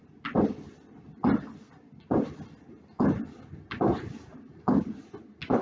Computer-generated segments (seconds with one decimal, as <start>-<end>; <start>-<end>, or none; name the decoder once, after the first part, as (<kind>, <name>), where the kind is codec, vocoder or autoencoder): 4.3-4.8 (vocoder, BigVGAN v2)